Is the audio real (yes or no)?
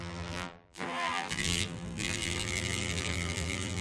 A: no